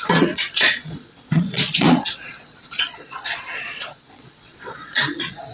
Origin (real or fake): fake